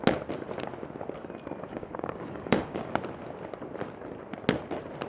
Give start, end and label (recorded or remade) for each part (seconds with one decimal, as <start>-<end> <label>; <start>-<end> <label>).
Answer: 0.0-1.7 recorded; 1.7-2.9 remade; 2.9-5.1 recorded